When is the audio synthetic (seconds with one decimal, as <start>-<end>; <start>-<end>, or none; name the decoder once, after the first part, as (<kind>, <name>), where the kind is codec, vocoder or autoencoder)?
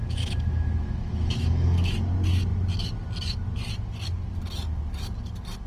0.0-1.9 (autoencoder, DAC-VAE)